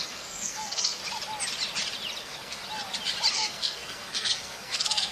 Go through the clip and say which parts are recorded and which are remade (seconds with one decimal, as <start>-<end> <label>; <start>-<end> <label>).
0.0-1.0 remade; 1.0-2.2 recorded; 2.2-2.6 remade; 2.6-3.3 recorded; 3.3-5.1 remade

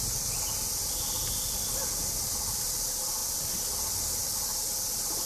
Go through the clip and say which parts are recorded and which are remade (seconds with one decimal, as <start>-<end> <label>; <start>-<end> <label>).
0.0-5.3 recorded

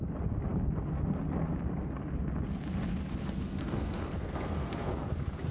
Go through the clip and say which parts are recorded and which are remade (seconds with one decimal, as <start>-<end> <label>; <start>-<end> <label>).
0.0-3.2 recorded; 3.2-4.9 remade; 4.9-5.5 recorded

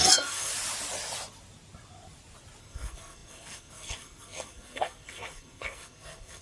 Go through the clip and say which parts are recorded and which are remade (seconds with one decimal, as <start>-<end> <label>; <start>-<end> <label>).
0.0-0.5 remade; 0.5-2.6 recorded; 2.6-6.4 remade

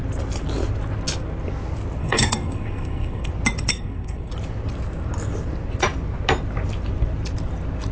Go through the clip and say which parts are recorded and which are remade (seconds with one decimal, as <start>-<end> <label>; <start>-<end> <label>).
0.0-2.0 recorded; 2.0-3.3 remade; 3.3-3.7 recorded; 3.7-4.3 remade; 4.3-7.9 recorded

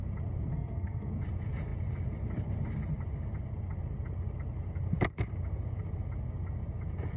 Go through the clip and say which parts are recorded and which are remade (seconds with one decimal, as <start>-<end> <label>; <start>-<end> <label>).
0.0-0.5 recorded; 0.5-1.1 remade; 1.1-7.2 recorded

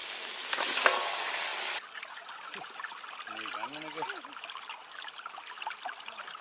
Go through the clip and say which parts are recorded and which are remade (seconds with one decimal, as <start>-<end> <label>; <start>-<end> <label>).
0.0-6.4 recorded

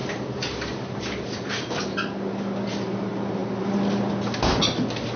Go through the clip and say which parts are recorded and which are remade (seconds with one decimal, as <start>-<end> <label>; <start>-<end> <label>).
0.0-5.2 recorded